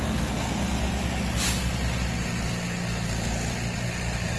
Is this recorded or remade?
recorded